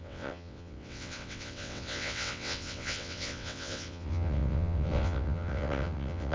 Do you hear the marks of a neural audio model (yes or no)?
yes